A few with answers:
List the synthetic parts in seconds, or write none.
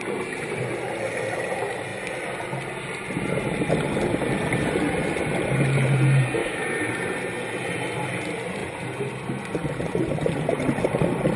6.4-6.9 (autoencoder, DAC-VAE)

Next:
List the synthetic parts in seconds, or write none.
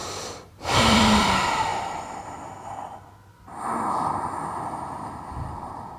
0.0-1.7 (vocoder, BigVGAN v2); 5.3-6.0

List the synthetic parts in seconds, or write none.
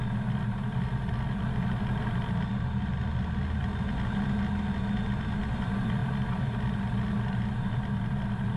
none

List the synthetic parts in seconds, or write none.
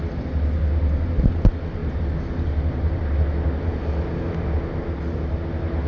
none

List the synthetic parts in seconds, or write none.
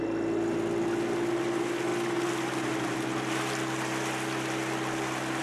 none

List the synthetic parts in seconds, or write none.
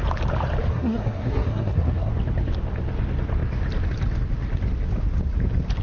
0.7-2.1 (codec, SNAC)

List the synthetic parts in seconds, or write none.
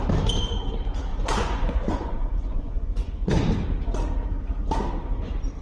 1.1-3.4 (vocoder, Vocos)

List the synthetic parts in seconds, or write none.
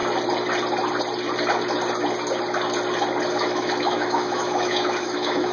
3.3-5.5 (autoencoder, DAC-VAE)